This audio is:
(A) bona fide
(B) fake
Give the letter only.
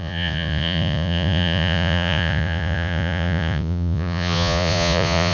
B